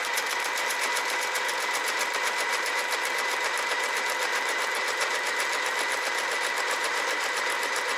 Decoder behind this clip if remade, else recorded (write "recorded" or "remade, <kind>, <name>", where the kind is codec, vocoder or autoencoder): remade, vocoder, BigVGAN v2